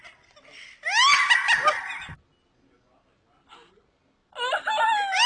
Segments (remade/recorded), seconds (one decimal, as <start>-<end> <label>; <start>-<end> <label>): 0.0-5.3 recorded